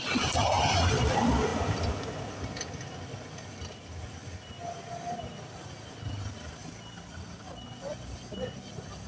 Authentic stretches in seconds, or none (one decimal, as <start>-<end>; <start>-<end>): 0.0-9.1